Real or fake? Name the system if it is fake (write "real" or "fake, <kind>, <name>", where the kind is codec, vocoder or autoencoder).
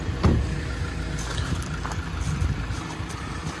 real